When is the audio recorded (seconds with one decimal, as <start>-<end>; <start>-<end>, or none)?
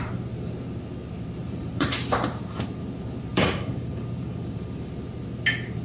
0.0-1.4; 2.7-3.3; 4.9-5.8